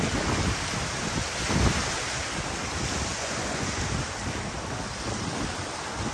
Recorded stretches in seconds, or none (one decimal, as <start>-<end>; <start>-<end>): 0.0-3.1; 3.8-6.1